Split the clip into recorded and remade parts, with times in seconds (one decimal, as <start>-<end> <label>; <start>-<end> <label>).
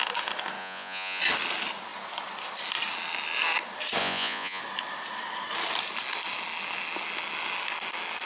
0.0-0.6 recorded; 0.6-1.2 remade; 1.2-4.0 recorded; 4.0-4.6 remade; 4.6-8.3 recorded